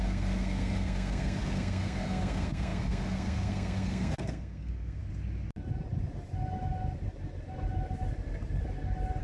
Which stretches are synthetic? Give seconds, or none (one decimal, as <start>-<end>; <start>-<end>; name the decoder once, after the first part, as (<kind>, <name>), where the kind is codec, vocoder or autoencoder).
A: 0.0-5.0 (codec, SNAC)